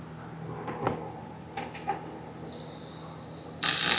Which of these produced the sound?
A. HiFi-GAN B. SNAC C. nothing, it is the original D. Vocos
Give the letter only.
C